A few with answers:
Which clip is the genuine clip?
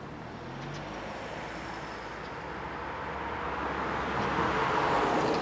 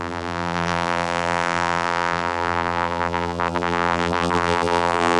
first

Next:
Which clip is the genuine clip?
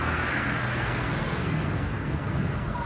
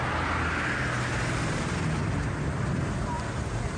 second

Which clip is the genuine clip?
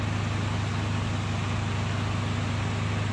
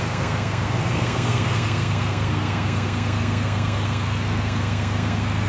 first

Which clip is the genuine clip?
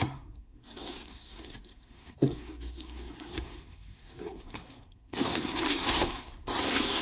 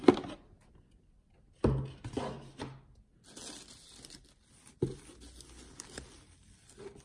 second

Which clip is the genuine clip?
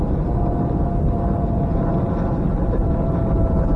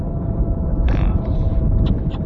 first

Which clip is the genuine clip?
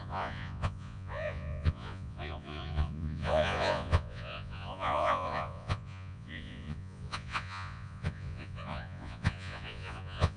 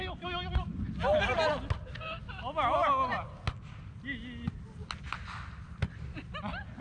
second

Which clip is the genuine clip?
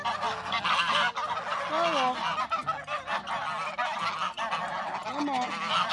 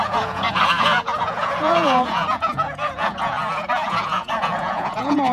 first